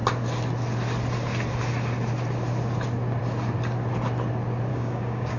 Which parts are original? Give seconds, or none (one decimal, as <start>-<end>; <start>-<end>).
0.0-4.7